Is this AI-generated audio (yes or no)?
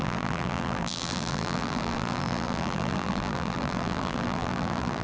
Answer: yes